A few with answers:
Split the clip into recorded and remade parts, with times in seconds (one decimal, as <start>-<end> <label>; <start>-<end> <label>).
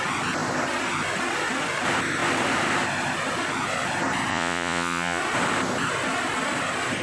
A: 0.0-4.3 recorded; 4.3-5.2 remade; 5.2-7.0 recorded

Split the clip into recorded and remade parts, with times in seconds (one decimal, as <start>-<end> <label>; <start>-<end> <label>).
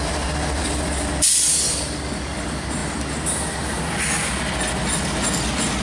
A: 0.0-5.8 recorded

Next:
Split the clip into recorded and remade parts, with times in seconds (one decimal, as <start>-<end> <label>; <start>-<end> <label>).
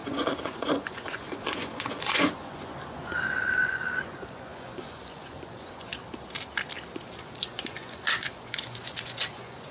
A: 0.0-5.9 remade; 5.9-7.2 recorded; 7.2-9.7 remade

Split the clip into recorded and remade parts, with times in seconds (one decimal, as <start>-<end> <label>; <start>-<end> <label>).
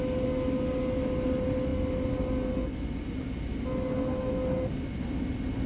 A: 0.0-5.7 recorded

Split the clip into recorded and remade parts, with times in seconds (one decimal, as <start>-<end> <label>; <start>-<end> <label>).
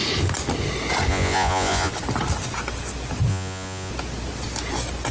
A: 0.0-1.1 recorded; 1.1-1.9 remade; 1.9-3.3 recorded; 3.3-3.9 remade; 3.9-5.1 recorded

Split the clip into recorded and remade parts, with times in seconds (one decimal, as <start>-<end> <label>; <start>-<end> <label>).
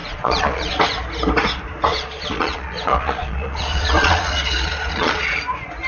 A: 0.0-0.7 remade; 0.7-1.9 recorded; 1.9-5.4 remade; 5.4-5.9 recorded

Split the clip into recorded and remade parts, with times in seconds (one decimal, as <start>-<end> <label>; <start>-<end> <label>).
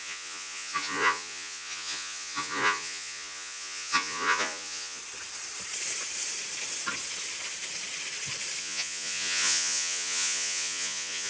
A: 0.0-5.0 remade; 5.0-8.6 recorded; 8.6-11.3 remade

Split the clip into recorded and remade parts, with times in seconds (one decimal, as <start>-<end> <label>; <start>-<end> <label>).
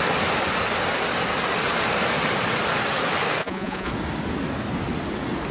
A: 0.0-3.4 recorded; 3.4-3.9 remade; 3.9-5.5 recorded